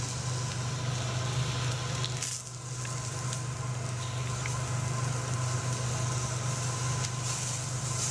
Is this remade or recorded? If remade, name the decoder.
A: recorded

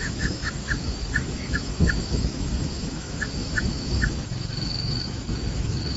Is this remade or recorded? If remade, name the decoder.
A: remade, autoencoder, DAC-VAE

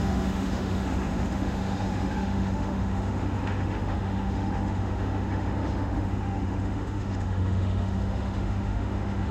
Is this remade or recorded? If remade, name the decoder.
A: remade, autoencoder, DAC-VAE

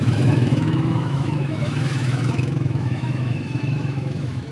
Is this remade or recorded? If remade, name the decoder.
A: remade, autoencoder, DAC-VAE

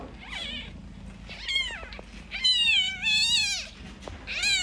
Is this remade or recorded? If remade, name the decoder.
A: recorded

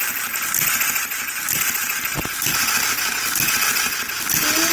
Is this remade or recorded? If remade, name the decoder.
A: recorded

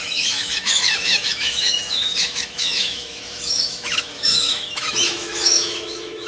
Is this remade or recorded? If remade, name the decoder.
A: remade, autoencoder, DAC-VAE